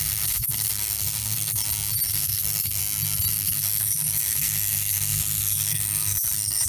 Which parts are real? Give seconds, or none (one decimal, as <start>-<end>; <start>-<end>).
1.6-2.1; 2.8-3.3